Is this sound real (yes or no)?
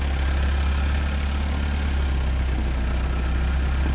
yes